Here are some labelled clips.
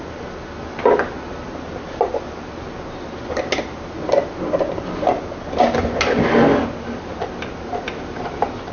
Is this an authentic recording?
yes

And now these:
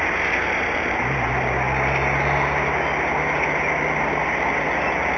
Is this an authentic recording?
yes